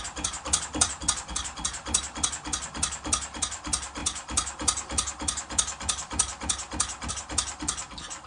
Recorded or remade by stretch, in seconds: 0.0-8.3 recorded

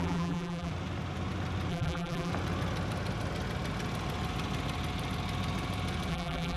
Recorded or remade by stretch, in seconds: 0.0-0.7 remade; 0.7-1.7 recorded; 1.7-2.3 remade; 2.3-6.1 recorded; 6.1-6.6 remade

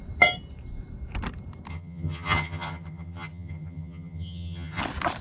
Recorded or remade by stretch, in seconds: 0.0-1.7 recorded; 1.7-4.8 remade; 4.8-5.2 recorded